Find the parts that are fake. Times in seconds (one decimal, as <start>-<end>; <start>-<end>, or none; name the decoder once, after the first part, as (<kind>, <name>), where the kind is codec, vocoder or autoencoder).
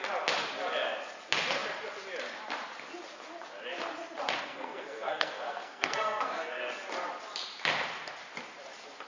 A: 4.4-6.6 (codec, SNAC)